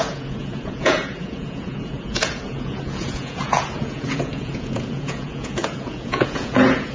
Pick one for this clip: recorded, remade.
remade